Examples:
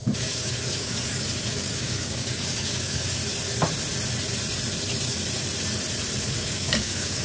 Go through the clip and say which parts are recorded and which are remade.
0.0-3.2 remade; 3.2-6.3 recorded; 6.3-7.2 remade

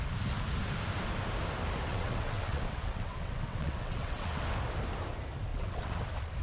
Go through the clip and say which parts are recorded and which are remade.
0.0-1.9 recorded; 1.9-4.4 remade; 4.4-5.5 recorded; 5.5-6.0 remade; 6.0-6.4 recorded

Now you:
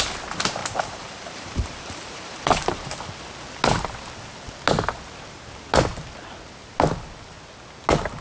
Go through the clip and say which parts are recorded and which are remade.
0.0-0.6 recorded; 0.6-3.0 remade; 3.0-8.2 recorded